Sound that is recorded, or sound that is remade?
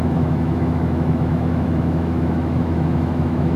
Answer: remade